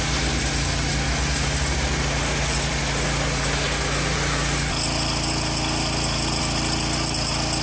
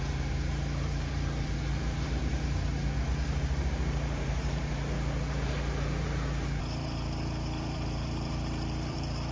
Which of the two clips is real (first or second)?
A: first